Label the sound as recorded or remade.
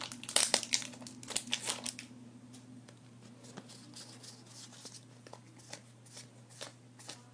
recorded